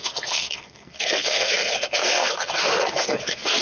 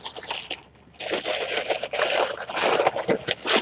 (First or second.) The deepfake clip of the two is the first